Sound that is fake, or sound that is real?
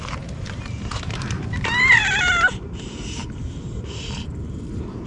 fake